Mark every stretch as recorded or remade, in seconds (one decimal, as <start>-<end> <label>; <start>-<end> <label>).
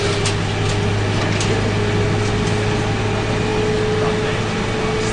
0.0-5.1 recorded